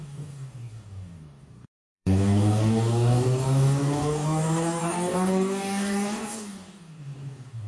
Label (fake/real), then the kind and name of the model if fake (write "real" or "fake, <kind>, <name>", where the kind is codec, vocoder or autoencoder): fake, codec, DAC